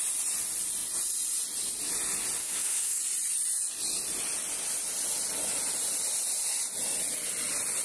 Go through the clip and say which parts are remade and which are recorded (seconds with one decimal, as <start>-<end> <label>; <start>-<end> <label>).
0.0-2.4 recorded; 2.4-3.0 remade; 3.0-7.8 recorded